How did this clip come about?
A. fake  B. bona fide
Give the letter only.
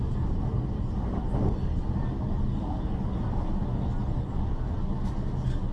B